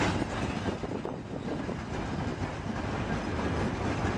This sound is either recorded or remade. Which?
recorded